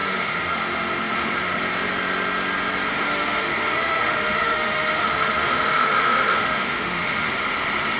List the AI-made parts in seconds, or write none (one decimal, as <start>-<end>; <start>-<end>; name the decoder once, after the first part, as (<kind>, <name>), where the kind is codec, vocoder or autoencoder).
0.0-1.6 (autoencoder, DAC-VAE); 2.9-7.3